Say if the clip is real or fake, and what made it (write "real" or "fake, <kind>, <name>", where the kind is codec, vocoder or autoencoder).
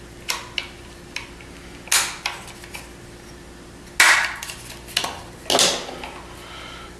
real